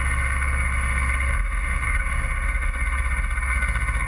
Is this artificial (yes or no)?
yes